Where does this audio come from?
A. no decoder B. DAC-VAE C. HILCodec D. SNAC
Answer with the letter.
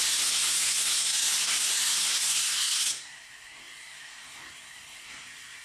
D